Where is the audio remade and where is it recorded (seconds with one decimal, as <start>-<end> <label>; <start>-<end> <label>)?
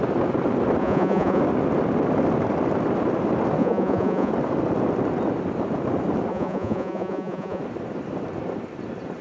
0.0-0.8 recorded; 0.8-1.4 remade; 1.4-3.6 recorded; 3.6-4.3 remade; 4.3-6.3 recorded; 6.3-7.6 remade; 7.6-9.2 recorded